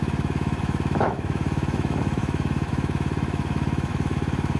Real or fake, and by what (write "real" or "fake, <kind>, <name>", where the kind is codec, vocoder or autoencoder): fake, autoencoder, DAC-VAE